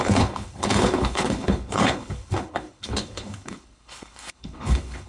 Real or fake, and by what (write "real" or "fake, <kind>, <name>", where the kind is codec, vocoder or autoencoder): fake, codec, HILCodec